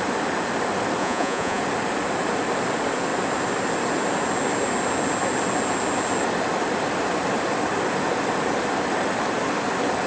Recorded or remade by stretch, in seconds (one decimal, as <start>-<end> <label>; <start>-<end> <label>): 0.0-1.0 recorded; 1.0-1.6 remade; 1.6-10.1 recorded

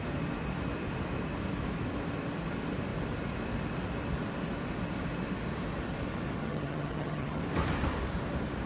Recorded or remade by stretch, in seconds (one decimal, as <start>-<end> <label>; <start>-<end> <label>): 0.0-6.4 recorded; 6.4-7.4 remade; 7.4-8.7 recorded

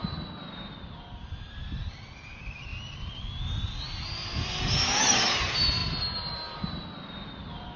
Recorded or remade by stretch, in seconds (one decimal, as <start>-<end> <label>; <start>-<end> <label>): 0.0-0.5 recorded; 0.5-5.8 remade; 5.8-6.7 recorded; 6.7-7.8 remade

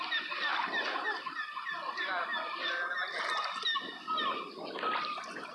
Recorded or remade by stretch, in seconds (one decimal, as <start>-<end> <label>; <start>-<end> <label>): 0.0-5.5 recorded

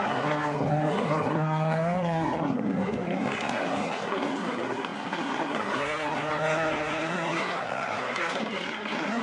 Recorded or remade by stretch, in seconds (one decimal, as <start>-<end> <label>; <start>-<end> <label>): 0.0-9.2 remade

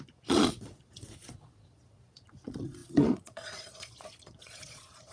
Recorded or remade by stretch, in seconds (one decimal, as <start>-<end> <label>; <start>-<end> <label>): 0.0-5.1 remade